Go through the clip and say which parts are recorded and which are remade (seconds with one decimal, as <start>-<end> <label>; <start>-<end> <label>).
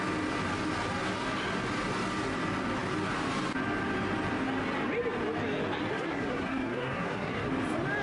0.0-5.9 recorded; 5.9-7.5 remade; 7.5-8.0 recorded